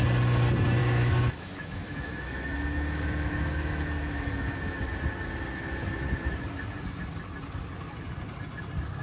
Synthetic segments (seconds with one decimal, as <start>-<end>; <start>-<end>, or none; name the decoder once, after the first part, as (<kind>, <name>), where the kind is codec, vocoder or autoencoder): 0.8-4.8 (autoencoder, DAC-VAE)